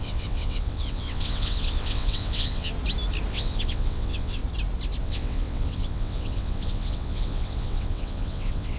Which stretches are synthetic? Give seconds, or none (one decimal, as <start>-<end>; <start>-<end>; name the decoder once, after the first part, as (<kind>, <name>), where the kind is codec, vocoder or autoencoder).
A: 0.0-2.7 (vocoder, WaveNeXt); 3.3-4.4; 5.0-8.8